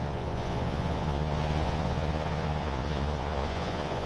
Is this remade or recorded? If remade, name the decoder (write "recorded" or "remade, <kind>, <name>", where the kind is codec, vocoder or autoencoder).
remade, vocoder, Vocos